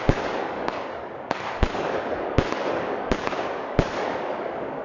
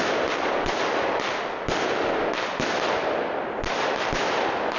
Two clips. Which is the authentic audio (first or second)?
second